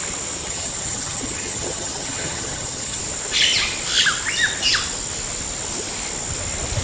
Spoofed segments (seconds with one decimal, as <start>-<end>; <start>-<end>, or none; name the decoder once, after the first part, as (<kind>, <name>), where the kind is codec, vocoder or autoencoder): 0.4-3.0 (vocoder, HiFi-GAN)